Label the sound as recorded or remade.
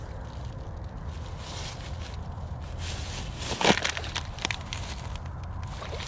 recorded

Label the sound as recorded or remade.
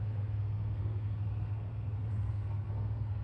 remade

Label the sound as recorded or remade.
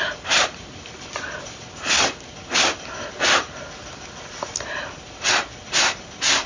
recorded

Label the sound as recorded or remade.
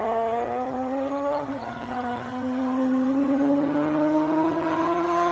remade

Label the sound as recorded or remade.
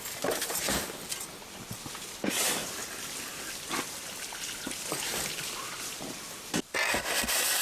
recorded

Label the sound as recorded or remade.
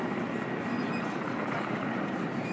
remade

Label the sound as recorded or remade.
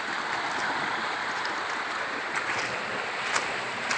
recorded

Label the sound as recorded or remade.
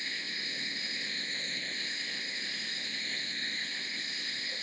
remade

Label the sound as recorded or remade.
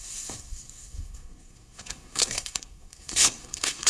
remade